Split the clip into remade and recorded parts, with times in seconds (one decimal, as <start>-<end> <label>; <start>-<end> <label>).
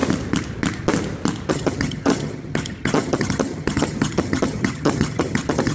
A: 0.0-1.5 recorded; 1.5-5.7 remade